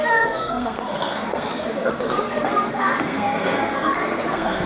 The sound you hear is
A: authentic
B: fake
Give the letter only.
B